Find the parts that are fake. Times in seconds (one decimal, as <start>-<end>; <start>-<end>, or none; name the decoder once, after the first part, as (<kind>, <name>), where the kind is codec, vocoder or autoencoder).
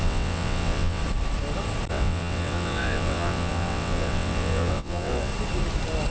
0.0-1.0 (vocoder, WaveNeXt); 1.9-5.3